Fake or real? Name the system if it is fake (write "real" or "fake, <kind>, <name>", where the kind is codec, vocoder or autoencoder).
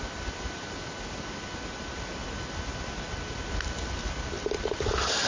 real